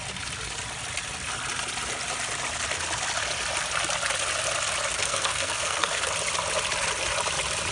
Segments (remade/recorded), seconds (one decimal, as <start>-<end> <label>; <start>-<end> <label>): 0.0-5.0 recorded; 5.0-6.1 remade; 6.1-7.7 recorded